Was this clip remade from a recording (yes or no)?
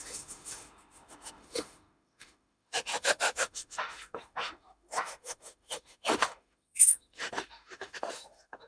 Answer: yes